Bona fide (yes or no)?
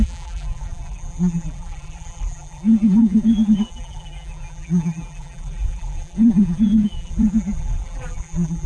no